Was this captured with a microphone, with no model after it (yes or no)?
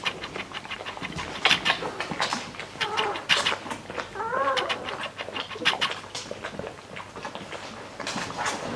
yes